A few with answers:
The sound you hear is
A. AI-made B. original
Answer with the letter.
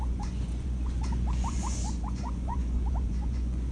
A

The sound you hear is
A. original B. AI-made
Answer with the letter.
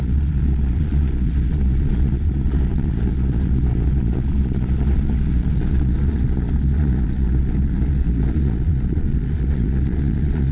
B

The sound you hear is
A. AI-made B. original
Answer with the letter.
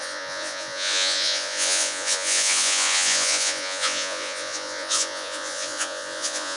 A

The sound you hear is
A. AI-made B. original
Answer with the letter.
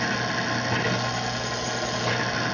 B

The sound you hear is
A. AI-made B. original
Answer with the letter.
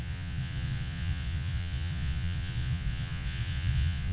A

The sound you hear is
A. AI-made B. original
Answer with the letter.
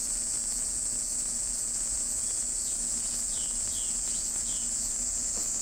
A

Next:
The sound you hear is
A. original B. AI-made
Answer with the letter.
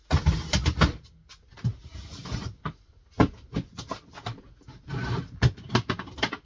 A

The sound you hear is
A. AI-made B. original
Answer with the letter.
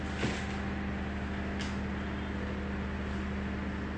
B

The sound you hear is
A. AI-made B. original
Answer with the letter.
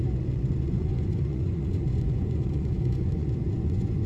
A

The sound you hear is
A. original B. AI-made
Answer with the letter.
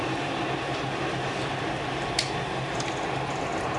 A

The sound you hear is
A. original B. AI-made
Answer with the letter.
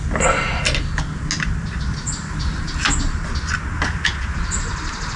A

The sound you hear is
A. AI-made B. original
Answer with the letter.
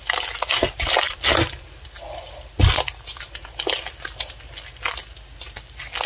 B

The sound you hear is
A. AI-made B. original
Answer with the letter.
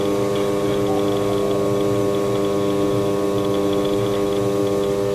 B